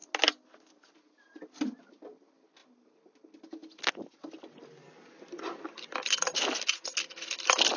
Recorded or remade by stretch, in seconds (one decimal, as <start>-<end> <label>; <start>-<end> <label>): 0.0-7.8 recorded